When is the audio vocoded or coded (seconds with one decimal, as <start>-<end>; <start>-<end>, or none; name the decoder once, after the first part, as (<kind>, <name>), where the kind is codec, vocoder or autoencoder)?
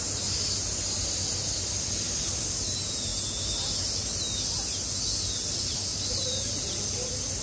none